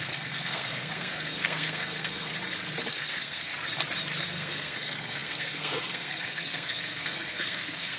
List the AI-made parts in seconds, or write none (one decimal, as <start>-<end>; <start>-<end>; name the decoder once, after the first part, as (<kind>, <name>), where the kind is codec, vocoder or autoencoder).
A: 0.0-2.3 (codec, SNAC); 2.9-3.5; 4.2-8.0